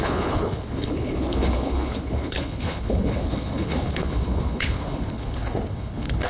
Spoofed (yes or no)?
yes